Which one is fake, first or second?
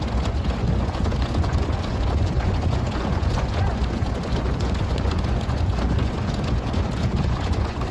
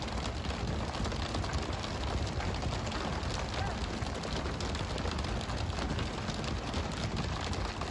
first